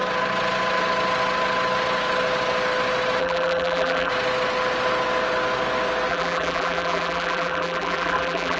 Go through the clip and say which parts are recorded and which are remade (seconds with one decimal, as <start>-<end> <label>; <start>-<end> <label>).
0.0-3.2 recorded; 3.2-4.1 remade; 4.1-6.1 recorded; 6.1-8.6 remade